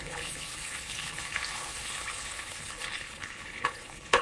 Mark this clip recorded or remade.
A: remade